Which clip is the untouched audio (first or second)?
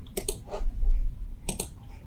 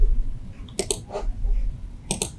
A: second